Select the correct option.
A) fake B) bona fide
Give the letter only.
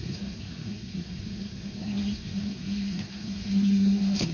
A